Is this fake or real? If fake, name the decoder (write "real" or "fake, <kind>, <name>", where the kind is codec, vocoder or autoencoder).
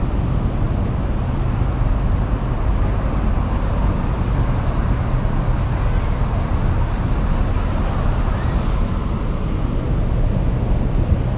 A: real